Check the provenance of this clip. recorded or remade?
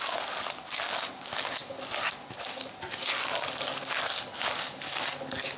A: recorded